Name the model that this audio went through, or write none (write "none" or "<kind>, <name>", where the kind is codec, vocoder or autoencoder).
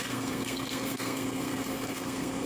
codec, SNAC